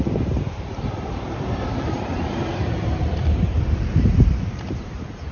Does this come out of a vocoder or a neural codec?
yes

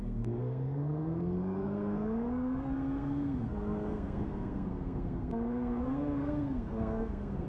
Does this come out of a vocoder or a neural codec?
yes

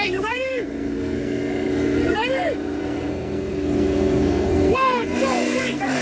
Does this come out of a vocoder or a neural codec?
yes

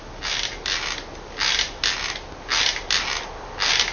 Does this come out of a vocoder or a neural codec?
no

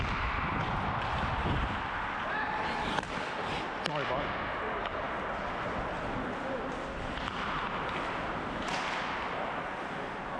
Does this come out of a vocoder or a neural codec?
no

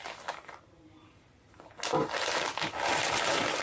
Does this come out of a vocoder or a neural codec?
no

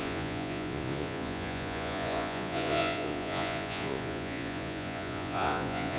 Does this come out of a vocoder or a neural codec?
yes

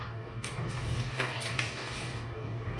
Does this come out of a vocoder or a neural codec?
yes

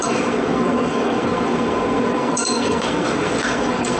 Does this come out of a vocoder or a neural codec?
yes